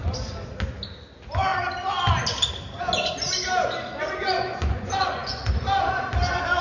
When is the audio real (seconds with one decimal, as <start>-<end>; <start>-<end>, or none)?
0.0-4.2; 5.4-6.6